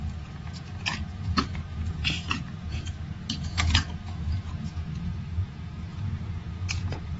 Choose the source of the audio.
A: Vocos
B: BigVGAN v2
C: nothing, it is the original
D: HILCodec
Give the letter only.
A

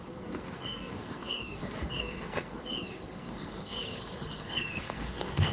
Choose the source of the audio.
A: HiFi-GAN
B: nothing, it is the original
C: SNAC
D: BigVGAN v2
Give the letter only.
C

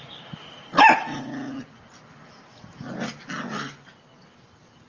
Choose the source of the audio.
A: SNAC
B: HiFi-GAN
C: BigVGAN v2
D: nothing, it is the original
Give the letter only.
D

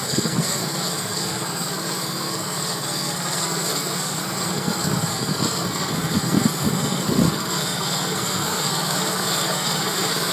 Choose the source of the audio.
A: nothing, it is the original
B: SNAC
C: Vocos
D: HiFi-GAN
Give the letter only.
B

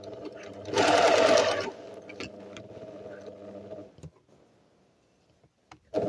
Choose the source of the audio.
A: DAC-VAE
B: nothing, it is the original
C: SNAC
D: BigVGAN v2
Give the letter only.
B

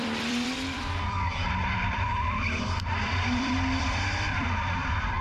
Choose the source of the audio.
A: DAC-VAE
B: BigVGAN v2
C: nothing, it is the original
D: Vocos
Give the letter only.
B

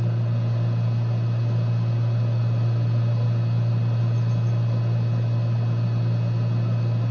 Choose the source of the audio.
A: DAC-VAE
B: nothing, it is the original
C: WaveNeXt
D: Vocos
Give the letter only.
B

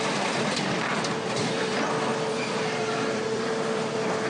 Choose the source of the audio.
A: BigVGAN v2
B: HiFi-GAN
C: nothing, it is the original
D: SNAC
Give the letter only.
A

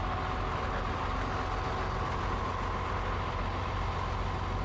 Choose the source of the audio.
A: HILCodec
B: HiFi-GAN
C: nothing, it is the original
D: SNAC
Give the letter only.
C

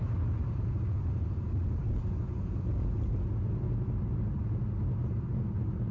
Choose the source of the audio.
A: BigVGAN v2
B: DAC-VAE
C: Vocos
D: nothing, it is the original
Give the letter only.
D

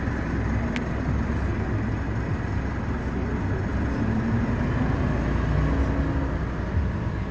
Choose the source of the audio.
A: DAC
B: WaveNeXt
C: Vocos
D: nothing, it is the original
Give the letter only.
D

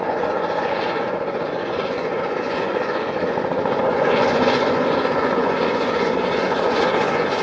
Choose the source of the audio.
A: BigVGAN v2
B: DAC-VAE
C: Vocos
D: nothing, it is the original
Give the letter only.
C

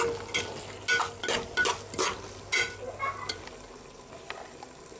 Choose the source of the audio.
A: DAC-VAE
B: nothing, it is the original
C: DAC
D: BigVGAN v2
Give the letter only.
B